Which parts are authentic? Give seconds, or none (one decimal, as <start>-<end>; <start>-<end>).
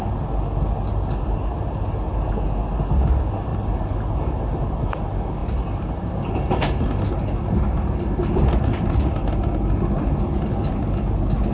0.0-11.5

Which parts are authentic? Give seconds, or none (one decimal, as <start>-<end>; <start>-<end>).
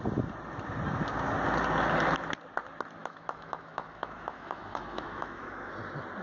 0.0-3.0; 5.7-6.2